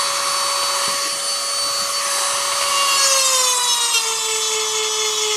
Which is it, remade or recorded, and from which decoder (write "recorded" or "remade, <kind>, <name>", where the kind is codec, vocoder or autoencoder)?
recorded